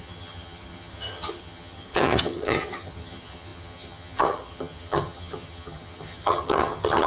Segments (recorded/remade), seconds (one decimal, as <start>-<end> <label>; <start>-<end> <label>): 0.0-7.1 remade